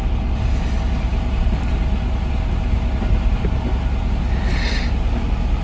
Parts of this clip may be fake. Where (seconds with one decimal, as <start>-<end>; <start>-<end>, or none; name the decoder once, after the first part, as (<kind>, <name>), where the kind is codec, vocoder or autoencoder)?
none